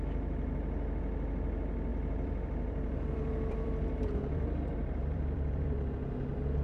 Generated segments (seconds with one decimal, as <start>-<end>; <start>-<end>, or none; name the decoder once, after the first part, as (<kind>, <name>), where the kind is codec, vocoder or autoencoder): 1.9-5.9 (vocoder, BigVGAN v2)